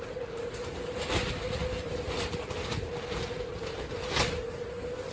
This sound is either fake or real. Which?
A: real